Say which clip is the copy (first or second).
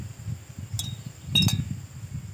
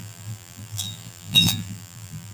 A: second